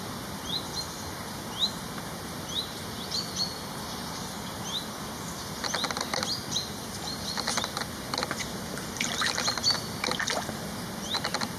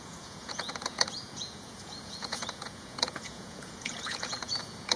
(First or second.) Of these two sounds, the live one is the first